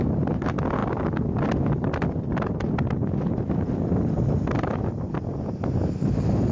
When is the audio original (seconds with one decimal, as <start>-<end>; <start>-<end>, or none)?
0.0-6.5